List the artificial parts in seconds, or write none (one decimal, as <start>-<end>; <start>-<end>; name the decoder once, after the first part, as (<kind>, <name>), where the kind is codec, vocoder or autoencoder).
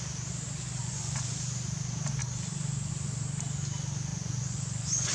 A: 0.8-1.3 (vocoder, Vocos); 4.1-5.1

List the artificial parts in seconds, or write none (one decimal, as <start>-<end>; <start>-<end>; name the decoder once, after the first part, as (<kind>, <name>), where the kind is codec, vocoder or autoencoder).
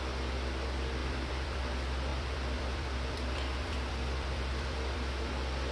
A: 1.0-1.6 (vocoder, BigVGAN v2); 2.1-5.3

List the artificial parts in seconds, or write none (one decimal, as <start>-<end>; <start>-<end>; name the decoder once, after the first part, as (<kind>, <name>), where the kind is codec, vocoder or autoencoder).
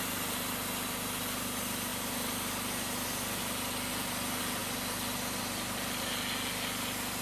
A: none